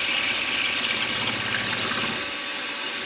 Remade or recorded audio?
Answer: recorded